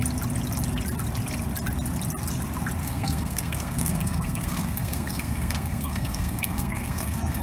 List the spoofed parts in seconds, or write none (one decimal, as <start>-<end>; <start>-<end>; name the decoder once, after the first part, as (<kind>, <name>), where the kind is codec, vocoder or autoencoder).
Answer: 2.8-7.4 (codec, SNAC)